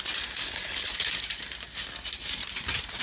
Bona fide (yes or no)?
yes